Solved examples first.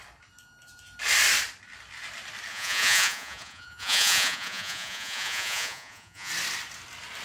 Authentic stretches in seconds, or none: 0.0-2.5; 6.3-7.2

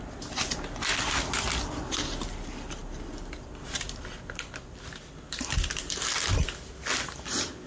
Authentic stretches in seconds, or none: 0.0-7.7

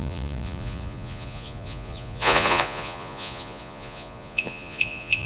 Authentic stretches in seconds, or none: none

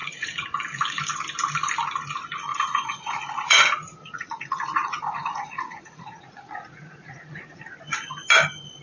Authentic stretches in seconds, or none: 1.0-2.5; 7.6-8.8